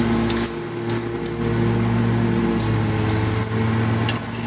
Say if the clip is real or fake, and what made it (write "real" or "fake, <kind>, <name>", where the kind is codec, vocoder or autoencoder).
real